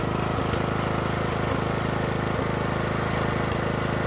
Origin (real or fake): real